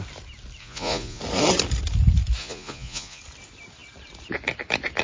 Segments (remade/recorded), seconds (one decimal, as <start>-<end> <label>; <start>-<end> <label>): 0.0-0.6 recorded; 0.6-1.2 remade; 1.2-2.4 recorded; 2.4-3.2 remade; 3.2-5.0 recorded